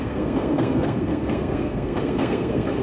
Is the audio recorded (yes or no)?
no